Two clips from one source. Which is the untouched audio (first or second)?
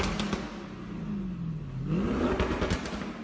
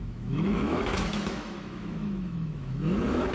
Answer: first